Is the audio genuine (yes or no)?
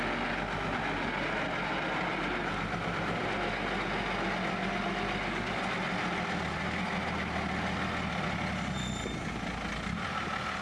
yes